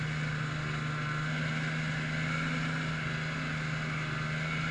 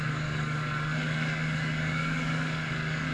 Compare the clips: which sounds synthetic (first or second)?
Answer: second